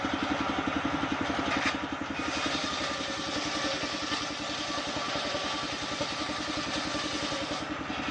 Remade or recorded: recorded